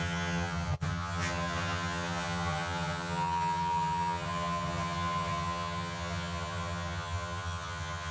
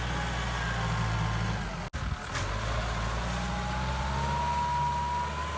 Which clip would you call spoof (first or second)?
first